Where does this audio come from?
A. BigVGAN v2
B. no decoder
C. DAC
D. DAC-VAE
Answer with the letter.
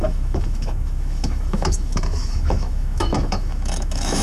D